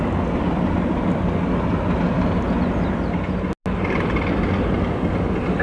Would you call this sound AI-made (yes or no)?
no